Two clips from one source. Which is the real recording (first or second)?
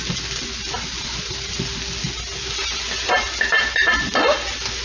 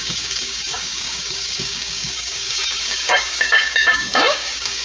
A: first